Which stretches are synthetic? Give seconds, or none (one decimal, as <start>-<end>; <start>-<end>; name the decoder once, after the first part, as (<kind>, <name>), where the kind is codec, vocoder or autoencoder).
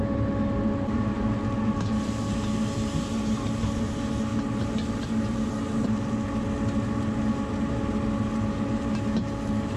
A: none